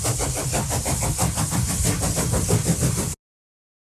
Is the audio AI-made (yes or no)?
no